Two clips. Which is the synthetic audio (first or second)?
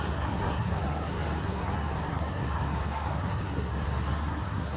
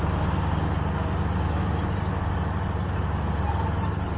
first